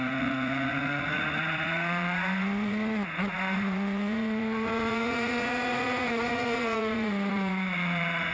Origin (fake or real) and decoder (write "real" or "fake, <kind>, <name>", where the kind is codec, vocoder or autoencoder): fake, vocoder, Vocos